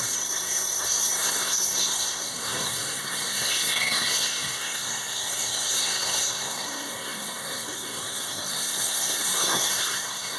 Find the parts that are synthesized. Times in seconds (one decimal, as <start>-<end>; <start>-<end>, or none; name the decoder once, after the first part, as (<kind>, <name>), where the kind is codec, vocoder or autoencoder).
0.0-10.4 (codec, SNAC)